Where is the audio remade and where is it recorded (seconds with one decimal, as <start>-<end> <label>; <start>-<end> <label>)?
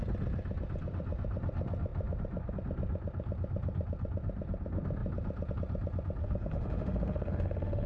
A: 0.0-6.2 recorded; 6.2-7.9 remade